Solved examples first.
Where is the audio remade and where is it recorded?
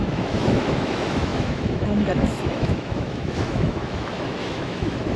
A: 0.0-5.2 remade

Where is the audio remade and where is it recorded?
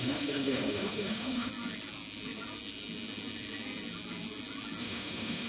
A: 0.0-1.5 remade; 1.5-4.8 recorded; 4.8-5.5 remade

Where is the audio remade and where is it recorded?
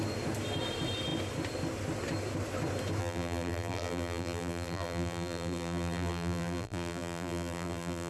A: 0.0-3.0 recorded; 3.0-8.1 remade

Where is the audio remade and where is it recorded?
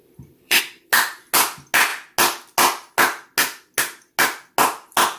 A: 0.0-0.6 remade; 0.6-5.2 recorded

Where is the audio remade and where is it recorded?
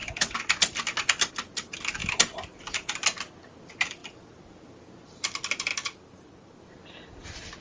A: 0.0-4.0 recorded; 4.0-4.8 remade; 4.8-7.6 recorded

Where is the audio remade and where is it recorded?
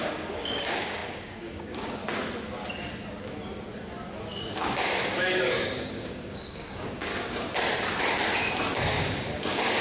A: 0.0-2.0 remade; 2.0-4.2 recorded; 4.2-7.1 remade; 7.1-8.8 recorded; 8.8-9.8 remade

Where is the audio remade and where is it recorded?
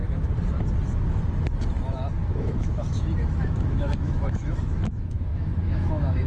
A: 0.0-2.1 recorded; 2.1-6.3 remade